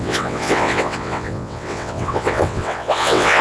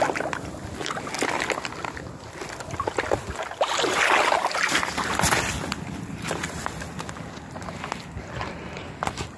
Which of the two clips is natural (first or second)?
second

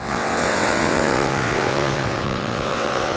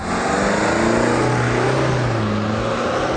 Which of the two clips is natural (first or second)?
second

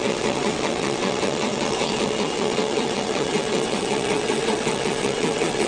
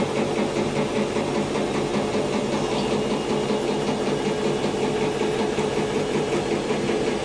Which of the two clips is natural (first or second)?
second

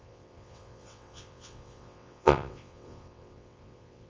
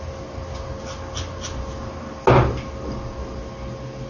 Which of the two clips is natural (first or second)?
second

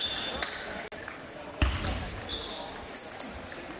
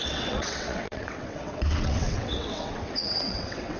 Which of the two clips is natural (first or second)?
first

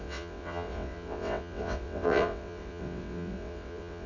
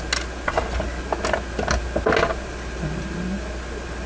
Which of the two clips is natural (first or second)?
second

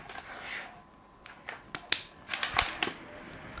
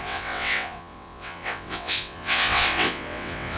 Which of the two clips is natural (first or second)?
first